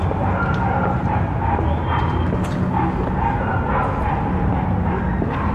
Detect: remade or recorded recorded